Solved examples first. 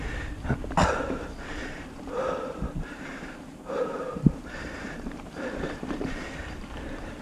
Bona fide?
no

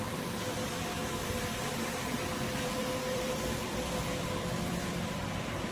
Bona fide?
no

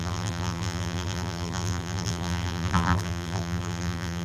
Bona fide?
no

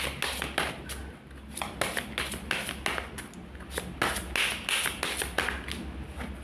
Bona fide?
yes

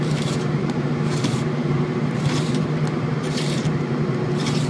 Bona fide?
no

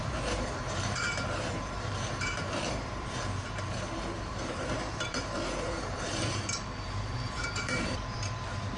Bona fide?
no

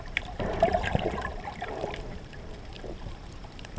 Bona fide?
no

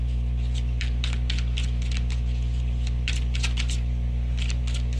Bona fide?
no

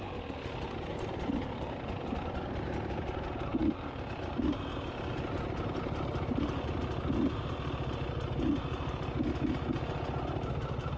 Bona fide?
yes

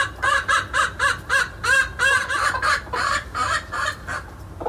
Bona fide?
yes